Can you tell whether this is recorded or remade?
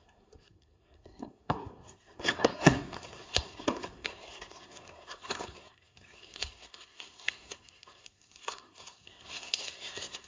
remade